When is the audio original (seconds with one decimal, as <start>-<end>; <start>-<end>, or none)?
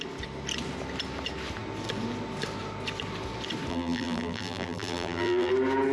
0.0-3.7; 5.5-5.9